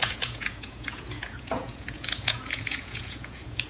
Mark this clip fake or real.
fake